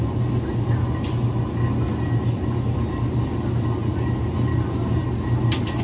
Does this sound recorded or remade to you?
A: recorded